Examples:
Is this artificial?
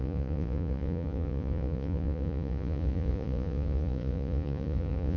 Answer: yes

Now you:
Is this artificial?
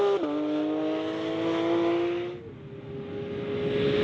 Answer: no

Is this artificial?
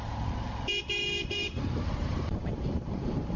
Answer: yes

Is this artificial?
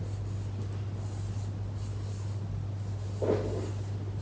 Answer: no